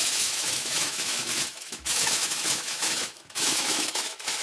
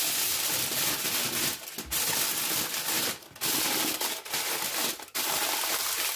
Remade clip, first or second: first